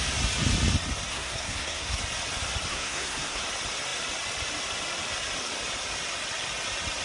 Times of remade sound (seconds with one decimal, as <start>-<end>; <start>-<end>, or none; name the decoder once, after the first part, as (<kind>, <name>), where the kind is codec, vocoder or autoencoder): 1.1-2.0 (codec, SNAC); 2.7-3.4